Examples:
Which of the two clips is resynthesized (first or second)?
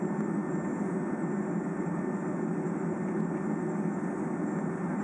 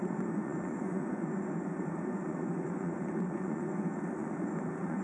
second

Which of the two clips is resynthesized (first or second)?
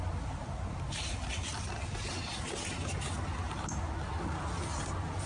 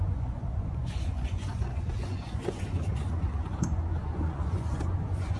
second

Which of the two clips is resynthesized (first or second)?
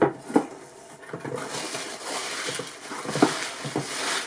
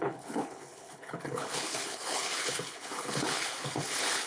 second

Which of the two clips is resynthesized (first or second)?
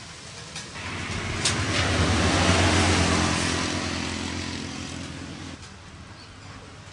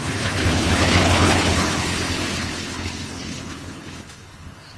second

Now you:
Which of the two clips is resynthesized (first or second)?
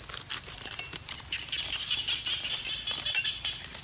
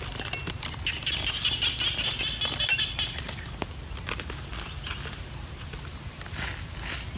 first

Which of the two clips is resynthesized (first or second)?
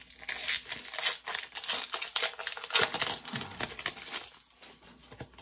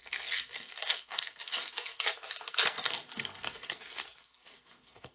second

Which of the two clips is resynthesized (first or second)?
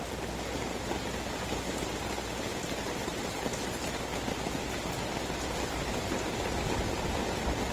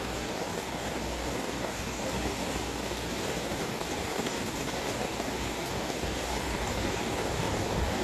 second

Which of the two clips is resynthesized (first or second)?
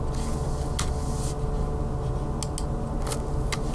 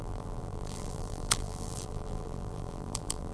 second